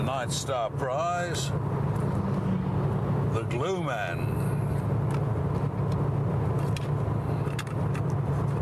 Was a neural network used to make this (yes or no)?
no